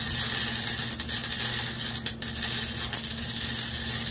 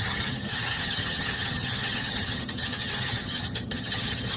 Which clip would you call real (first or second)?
first